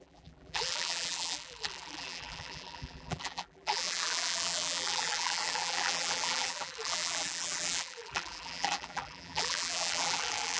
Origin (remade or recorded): remade